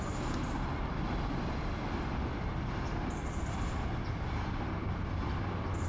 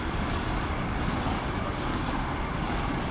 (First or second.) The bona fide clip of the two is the first